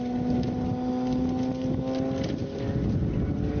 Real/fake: real